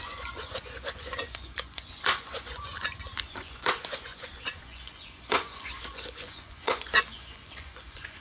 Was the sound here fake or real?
fake